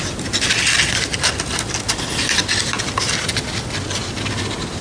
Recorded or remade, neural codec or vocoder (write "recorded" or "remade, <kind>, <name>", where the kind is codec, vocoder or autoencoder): recorded